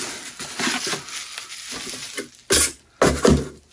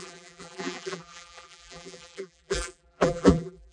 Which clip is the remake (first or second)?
second